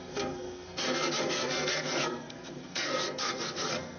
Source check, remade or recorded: remade